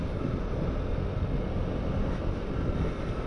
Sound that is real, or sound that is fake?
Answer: real